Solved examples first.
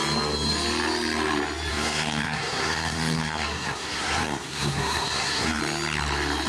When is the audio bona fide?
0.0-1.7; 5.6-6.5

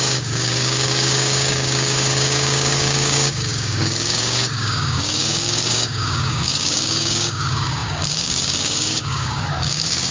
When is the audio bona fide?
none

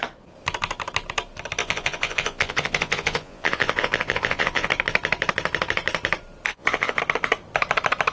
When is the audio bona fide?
0.0-1.6; 4.7-6.5; 7.0-8.1

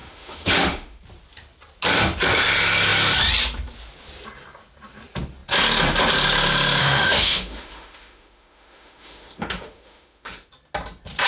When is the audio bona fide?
1.0-6.8; 10.5-11.3

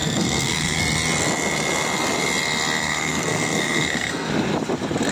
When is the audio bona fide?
0.8-2.8; 4.3-5.1

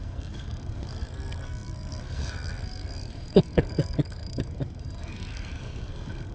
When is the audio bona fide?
none

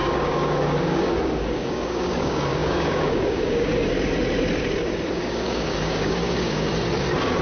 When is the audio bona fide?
3.7-5.1; 6.7-7.4

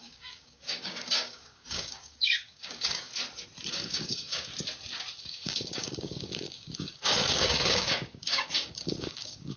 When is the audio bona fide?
3.1-3.7; 4.5-5.2